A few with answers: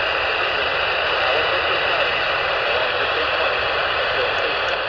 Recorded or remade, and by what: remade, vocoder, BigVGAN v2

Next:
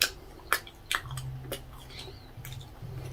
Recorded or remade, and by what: recorded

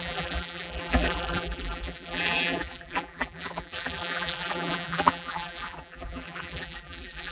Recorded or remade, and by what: remade, vocoder, BigVGAN v2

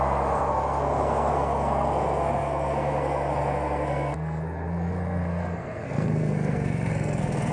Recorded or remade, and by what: remade, codec, SNAC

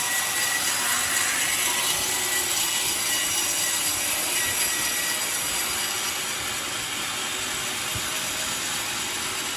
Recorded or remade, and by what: recorded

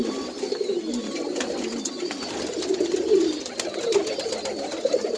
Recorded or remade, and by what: recorded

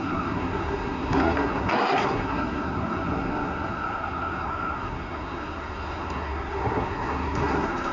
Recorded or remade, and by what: remade, codec, SNAC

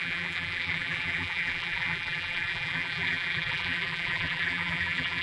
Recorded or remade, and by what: remade, vocoder, BigVGAN v2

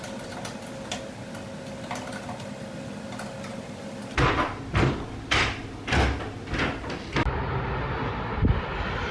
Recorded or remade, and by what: recorded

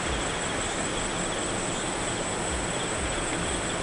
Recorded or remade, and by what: recorded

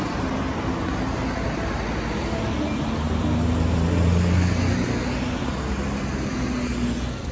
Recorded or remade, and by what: recorded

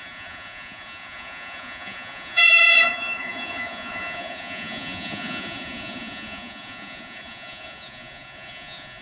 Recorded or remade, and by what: remade, vocoder, Vocos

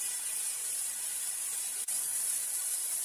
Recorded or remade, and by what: remade, vocoder, BigVGAN v2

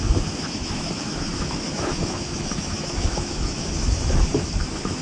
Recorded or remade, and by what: remade, autoencoder, DAC-VAE